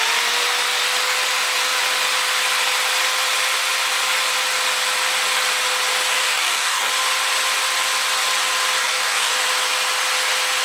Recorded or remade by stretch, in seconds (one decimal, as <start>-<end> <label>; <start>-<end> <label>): 0.0-6.1 recorded; 6.1-6.9 remade; 6.9-8.8 recorded; 8.8-9.3 remade; 9.3-10.6 recorded